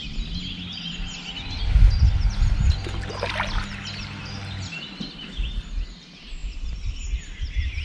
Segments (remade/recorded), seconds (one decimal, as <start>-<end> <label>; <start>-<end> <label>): 0.0-7.8 recorded